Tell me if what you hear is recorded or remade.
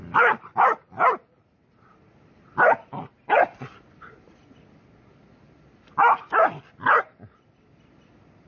recorded